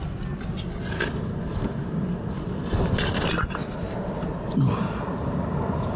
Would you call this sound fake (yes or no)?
no